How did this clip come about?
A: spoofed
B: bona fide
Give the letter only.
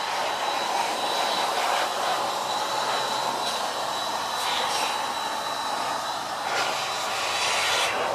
B